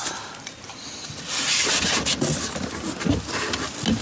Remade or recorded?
recorded